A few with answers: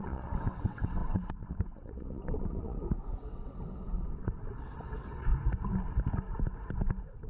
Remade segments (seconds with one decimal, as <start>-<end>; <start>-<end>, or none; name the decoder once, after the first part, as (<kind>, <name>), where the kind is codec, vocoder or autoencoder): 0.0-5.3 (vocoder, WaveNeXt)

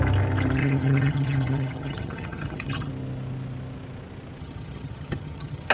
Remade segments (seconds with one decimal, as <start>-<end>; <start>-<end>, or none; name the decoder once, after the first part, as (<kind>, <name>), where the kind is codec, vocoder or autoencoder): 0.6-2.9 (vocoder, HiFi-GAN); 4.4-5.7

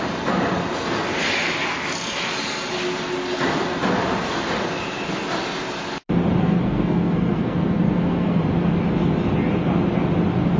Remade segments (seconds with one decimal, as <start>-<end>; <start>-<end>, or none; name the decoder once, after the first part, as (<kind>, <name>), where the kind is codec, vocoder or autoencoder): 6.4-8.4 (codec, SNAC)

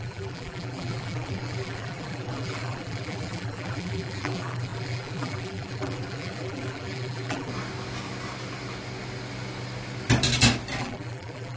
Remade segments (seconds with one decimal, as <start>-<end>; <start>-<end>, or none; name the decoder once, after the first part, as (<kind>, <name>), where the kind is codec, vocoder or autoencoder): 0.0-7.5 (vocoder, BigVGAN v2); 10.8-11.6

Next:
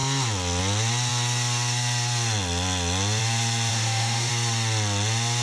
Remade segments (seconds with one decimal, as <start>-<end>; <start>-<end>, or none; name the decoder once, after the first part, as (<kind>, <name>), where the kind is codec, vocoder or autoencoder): 3.7-4.3 (autoencoder, DAC-VAE)